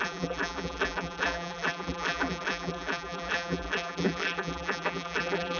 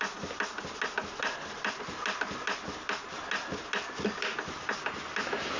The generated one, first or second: first